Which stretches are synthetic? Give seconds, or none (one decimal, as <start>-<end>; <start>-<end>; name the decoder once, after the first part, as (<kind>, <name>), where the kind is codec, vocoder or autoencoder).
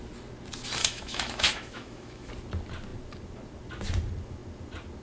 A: 0.8-2.3 (autoencoder, DAC-VAE)